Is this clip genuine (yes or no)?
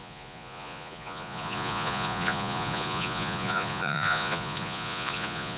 no